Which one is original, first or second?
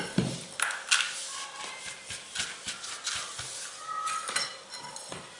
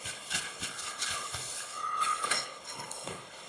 first